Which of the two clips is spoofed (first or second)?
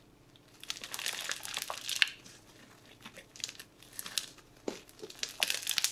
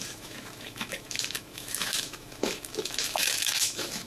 second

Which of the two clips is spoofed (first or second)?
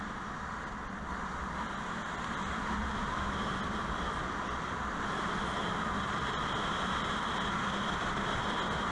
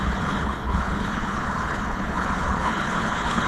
second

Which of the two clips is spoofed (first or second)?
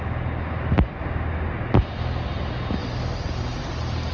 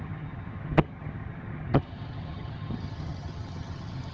second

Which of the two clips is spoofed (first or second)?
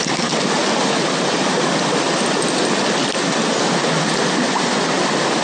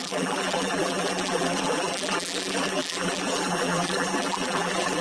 second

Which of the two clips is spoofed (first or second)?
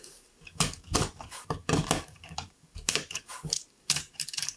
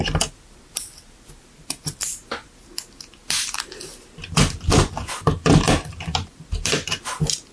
first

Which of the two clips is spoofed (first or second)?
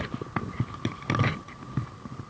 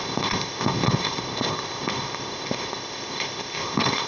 second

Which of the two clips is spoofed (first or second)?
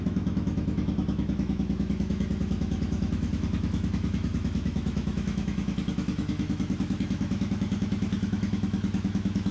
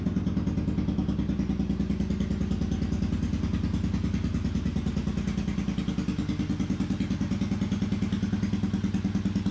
first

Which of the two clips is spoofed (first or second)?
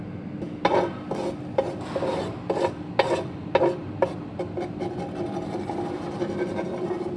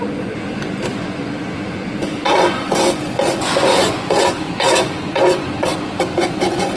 second